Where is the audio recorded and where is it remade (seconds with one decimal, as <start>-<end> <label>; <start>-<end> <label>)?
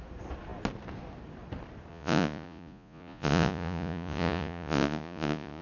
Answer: 0.0-1.9 recorded; 1.9-5.6 remade